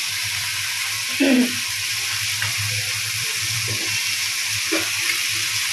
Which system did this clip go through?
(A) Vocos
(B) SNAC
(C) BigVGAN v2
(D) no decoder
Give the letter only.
D